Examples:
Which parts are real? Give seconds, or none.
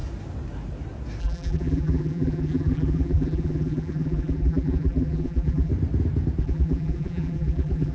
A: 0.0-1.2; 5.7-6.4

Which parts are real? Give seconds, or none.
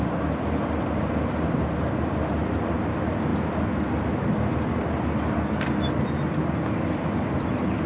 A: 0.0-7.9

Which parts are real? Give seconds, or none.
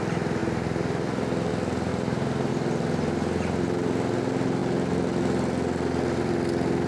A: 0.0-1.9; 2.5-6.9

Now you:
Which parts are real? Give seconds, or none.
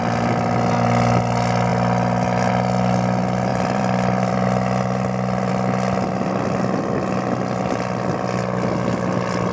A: 0.0-3.5; 5.5-9.5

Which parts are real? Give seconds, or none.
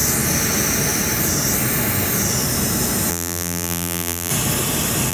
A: 0.0-3.1; 4.3-5.1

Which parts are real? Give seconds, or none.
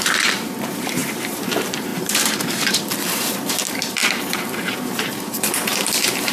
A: none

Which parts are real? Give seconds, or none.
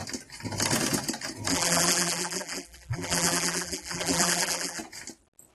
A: 0.0-1.5; 4.8-5.5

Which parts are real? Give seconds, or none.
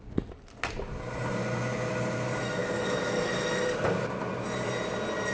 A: 0.0-5.3